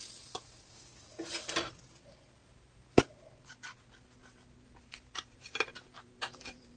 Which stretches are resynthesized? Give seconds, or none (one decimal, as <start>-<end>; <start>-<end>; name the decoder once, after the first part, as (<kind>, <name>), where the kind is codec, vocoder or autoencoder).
2.4-3.0 (vocoder, BigVGAN v2); 4.2-6.8